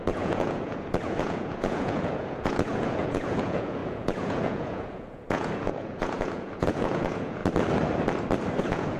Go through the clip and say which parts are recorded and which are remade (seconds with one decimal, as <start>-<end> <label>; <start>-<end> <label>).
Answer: 0.0-7.4 remade; 7.4-8.6 recorded; 8.6-9.0 remade